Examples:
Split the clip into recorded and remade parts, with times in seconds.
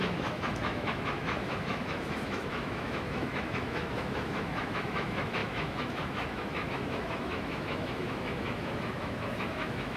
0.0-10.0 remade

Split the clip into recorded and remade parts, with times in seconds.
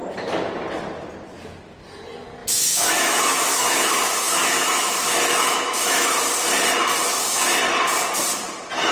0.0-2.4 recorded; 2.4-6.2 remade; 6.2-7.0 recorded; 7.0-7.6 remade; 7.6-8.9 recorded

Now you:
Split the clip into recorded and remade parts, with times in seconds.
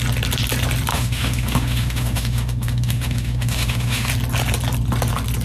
0.0-0.9 recorded; 0.9-4.1 remade; 4.1-5.4 recorded